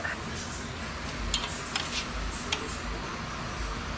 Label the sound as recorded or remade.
recorded